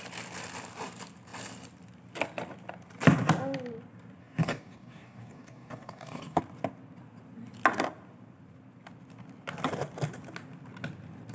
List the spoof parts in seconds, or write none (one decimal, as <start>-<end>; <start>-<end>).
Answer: 4.2-6.4